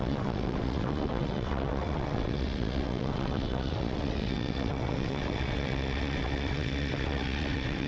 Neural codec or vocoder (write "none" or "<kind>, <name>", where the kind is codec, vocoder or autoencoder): vocoder, WaveNeXt